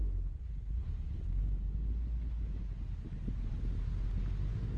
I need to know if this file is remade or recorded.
recorded